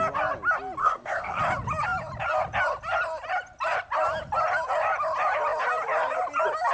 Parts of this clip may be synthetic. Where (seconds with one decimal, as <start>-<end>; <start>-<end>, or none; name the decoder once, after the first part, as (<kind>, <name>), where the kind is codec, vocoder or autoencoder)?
0.8-1.4 (codec, SNAC)